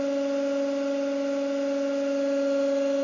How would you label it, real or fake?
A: real